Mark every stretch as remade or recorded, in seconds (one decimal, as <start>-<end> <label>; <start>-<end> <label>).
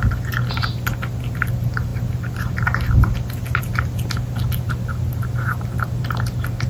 0.0-6.7 recorded